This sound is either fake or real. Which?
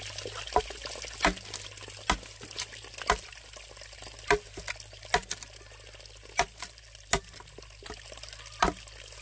real